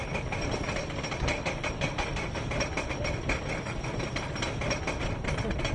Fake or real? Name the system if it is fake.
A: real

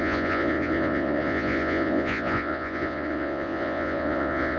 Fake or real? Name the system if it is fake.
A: fake, vocoder, Vocos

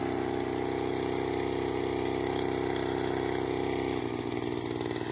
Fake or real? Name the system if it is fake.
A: real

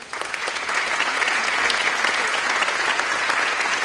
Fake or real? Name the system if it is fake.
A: fake, vocoder, Vocos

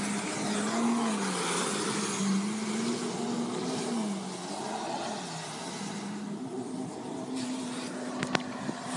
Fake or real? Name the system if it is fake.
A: real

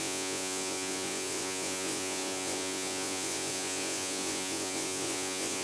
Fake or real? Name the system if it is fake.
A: fake, vocoder, Vocos